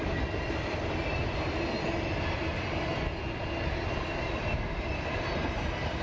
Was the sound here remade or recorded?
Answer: recorded